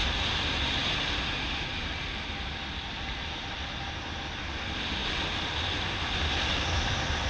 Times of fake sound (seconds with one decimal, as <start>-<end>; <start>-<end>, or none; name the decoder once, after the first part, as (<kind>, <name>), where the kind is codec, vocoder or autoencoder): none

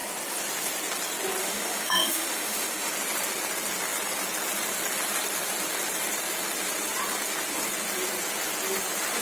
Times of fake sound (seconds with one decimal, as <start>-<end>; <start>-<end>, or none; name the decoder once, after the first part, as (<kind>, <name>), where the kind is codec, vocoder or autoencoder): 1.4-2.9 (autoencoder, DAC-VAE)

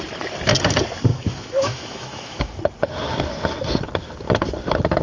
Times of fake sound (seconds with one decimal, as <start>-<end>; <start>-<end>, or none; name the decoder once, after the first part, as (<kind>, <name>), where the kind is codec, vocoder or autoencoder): 1.1-2.6 (autoencoder, DAC-VAE)

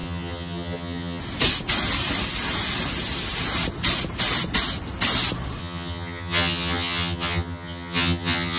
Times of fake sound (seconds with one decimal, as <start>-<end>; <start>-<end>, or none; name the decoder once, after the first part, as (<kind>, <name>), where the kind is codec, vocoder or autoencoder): 0.0-1.2 (vocoder, HiFi-GAN); 5.6-8.6

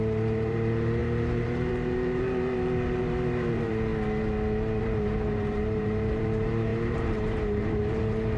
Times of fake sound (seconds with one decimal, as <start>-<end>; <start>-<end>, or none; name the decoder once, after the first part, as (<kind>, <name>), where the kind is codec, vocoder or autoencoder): 0.0-3.9 (vocoder, BigVGAN v2); 4.8-8.4